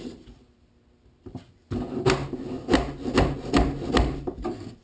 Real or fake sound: real